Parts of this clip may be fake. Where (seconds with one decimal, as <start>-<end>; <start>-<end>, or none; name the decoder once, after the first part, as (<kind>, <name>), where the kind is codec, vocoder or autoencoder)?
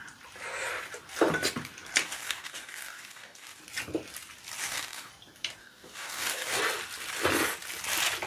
2.0-3.6 (codec, DAC); 4.6-5.1; 5.6-6.6